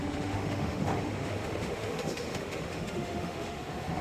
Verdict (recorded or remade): remade